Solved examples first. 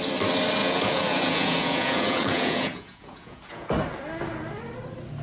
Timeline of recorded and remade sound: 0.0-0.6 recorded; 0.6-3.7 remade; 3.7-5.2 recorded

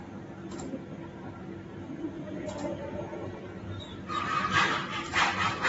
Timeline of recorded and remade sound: 0.0-3.9 recorded; 3.9-4.6 remade; 4.6-5.7 recorded

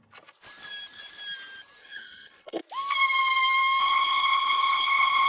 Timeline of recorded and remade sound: 0.0-1.8 recorded; 1.8-2.6 remade; 2.6-3.8 recorded; 3.8-5.3 remade